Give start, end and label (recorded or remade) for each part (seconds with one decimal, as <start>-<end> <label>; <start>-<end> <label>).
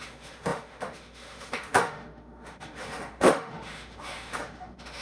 0.0-5.0 remade